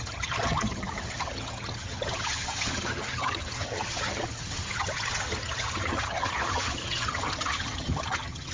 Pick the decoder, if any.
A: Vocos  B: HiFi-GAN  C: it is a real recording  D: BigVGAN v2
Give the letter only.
B